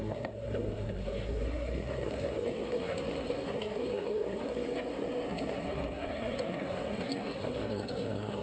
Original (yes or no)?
no